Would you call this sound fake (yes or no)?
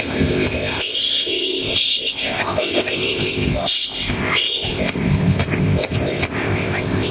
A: yes